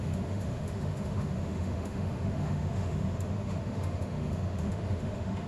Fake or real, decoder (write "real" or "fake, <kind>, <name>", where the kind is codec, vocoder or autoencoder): fake, autoencoder, DAC-VAE